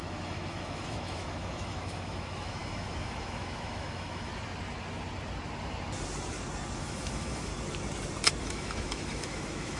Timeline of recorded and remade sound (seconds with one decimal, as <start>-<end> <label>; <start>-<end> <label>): 0.0-4.3 remade; 4.3-6.8 recorded; 6.8-7.5 remade; 7.5-8.4 recorded; 8.4-9.8 remade